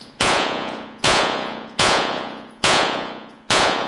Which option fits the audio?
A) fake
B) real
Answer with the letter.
A